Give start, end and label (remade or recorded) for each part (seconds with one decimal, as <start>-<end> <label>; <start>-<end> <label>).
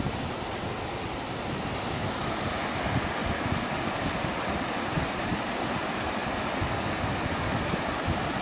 0.0-8.4 recorded